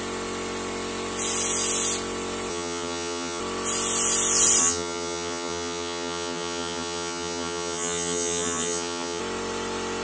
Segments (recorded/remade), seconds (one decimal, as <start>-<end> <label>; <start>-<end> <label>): 0.0-2.5 recorded; 2.5-3.4 remade; 3.4-4.6 recorded; 4.6-9.2 remade; 9.2-10.0 recorded